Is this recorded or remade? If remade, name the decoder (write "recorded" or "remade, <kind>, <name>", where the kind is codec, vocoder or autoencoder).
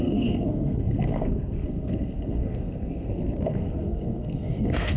remade, codec, SNAC